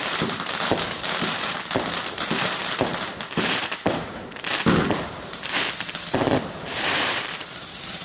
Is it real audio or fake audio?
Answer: fake